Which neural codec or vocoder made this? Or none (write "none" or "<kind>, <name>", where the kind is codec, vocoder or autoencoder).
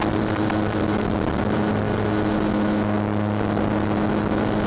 none